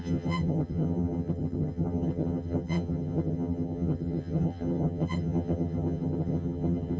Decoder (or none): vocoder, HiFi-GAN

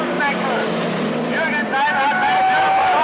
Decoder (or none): none